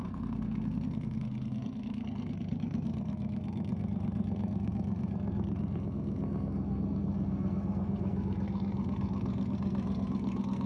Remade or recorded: remade